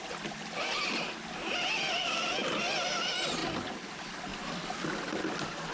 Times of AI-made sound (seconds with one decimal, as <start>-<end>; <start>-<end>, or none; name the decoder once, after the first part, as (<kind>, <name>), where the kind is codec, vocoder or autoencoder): none